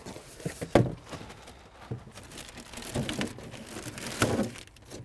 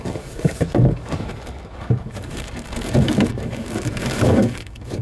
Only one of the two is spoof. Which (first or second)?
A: second